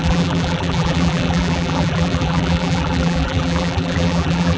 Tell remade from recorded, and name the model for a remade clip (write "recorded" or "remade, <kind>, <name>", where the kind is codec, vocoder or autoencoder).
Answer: remade, vocoder, BigVGAN v2